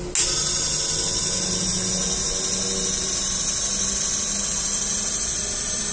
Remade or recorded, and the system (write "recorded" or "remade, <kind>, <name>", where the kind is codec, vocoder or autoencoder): recorded